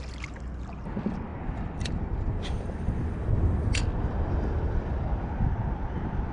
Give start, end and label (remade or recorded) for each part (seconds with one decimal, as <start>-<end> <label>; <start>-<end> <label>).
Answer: 0.0-1.3 recorded; 1.3-5.1 remade; 5.1-6.3 recorded